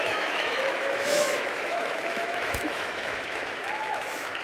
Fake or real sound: fake